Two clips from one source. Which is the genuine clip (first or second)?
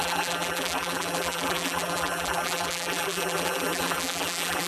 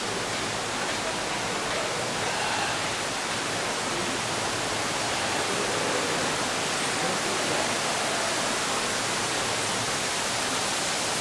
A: second